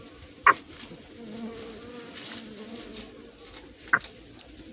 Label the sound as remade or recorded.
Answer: recorded